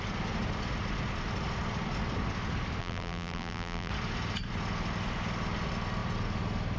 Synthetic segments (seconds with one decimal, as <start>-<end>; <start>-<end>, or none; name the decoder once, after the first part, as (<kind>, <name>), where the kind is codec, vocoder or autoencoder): 2.8-3.9 (vocoder, BigVGAN v2)